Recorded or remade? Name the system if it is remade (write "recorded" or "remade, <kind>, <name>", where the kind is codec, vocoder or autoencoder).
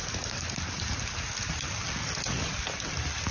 recorded